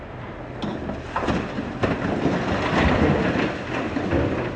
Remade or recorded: recorded